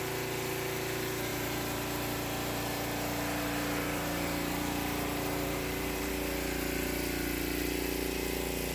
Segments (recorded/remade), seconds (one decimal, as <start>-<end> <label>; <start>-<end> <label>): 0.0-1.3 recorded; 1.3-6.1 remade; 6.1-8.7 recorded